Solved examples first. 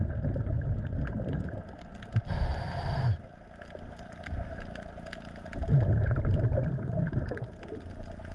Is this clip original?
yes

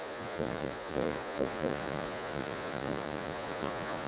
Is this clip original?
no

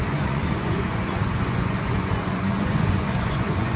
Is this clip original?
no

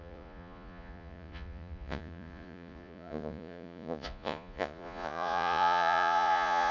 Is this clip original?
no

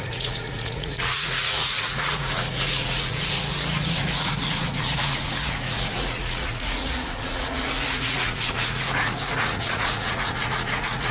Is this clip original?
no